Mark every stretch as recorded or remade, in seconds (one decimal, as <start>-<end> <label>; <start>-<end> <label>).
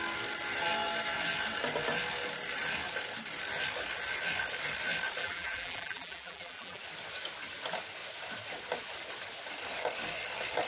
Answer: 0.0-5.2 recorded; 5.2-6.8 remade; 6.8-10.7 recorded